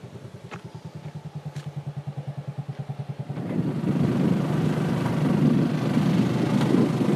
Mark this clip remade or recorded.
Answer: recorded